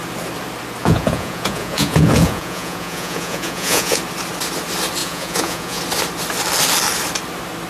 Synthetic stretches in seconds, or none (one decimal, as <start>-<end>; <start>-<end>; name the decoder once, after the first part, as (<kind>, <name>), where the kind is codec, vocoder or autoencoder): 0.8-4.0 (vocoder, Vocos); 5.0-5.8